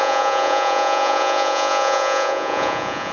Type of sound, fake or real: fake